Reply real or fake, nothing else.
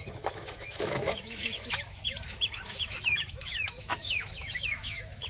fake